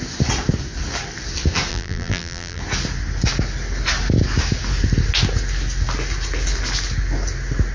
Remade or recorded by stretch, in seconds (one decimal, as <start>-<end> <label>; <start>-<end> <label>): 0.0-1.7 recorded; 1.7-2.6 remade; 2.6-7.7 recorded